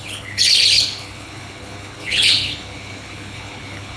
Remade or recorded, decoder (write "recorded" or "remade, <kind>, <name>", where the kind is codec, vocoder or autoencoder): remade, codec, HILCodec